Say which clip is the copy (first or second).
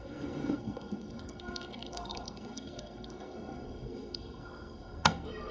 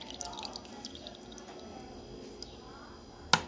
first